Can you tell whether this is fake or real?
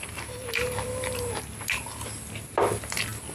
real